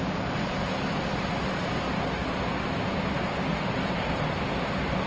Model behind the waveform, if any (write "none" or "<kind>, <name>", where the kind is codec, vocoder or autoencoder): none